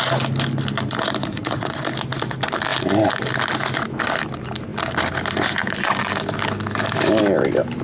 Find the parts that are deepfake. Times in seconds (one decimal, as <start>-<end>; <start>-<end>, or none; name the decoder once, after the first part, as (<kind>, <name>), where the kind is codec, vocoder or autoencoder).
1.2-1.8 (vocoder, Vocos)